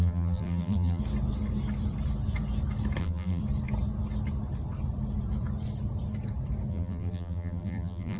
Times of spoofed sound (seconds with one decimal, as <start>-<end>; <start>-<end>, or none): 0.0-1.0; 3.0-3.4; 6.7-8.2